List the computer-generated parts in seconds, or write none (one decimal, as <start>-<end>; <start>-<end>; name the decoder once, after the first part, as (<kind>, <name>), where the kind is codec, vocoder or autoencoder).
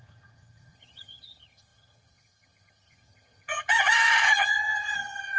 0.0-5.4 (vocoder, HiFi-GAN)